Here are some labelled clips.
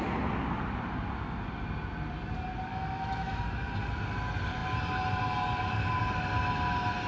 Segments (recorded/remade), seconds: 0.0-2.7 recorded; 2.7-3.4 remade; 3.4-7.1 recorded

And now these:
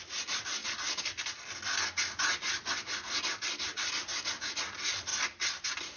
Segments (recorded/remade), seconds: 0.0-6.0 recorded

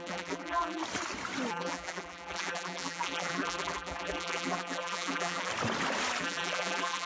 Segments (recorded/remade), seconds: 0.0-0.8 remade; 0.8-1.5 recorded; 1.5-5.5 remade; 5.5-6.2 recorded; 6.2-7.1 remade